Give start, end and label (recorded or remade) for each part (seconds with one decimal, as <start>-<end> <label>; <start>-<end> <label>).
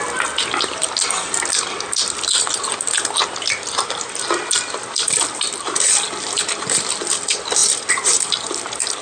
0.0-9.0 recorded